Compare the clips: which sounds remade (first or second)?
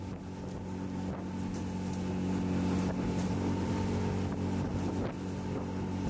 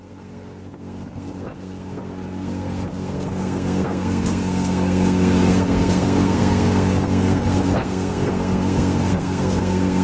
second